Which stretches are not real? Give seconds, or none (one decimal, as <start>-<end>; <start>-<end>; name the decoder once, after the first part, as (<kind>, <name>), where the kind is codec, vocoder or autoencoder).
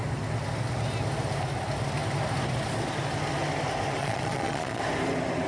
4.0-4.8 (vocoder, Vocos)